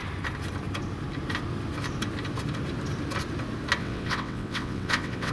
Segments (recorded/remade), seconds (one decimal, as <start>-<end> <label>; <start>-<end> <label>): 0.0-3.8 recorded; 3.8-5.3 remade